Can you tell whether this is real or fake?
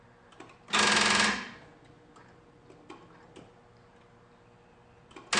real